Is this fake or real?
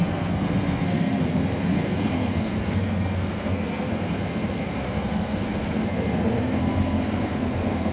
fake